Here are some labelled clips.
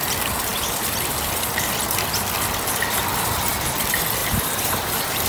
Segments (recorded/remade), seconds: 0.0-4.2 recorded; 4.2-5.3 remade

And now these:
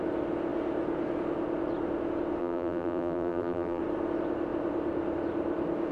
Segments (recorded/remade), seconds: 0.0-2.4 recorded; 2.4-3.8 remade; 3.8-5.9 recorded

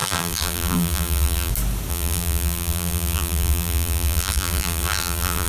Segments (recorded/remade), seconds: 0.0-1.5 remade; 1.5-1.9 recorded; 1.9-5.5 remade

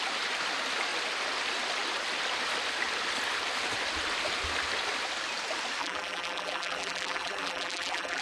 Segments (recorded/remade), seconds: 0.0-5.8 recorded; 5.8-8.2 remade

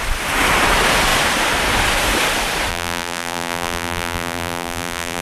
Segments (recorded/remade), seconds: 0.0-2.7 recorded; 2.7-5.2 remade

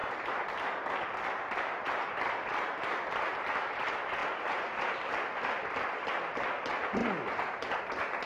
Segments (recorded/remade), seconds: 0.0-8.3 recorded